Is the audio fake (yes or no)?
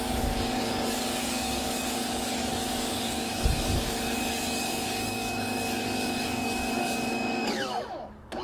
yes